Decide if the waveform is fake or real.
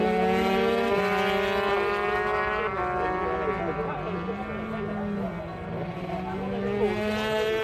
real